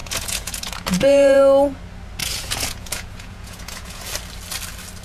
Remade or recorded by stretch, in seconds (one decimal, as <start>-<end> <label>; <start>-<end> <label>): 0.0-1.4 remade; 1.4-2.2 recorded; 2.2-4.0 remade; 4.0-5.0 recorded